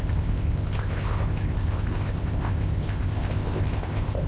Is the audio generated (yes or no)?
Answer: yes